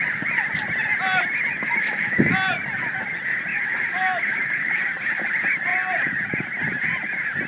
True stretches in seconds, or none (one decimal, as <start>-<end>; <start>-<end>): 0.0-1.5; 2.3-3.5; 4.8-7.5